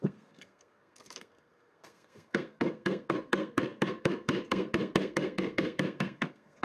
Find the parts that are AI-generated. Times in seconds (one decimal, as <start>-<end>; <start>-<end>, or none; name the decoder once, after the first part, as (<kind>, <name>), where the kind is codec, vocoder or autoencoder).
0.0-6.6 (codec, SNAC)